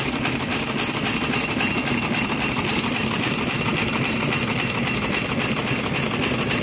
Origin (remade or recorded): recorded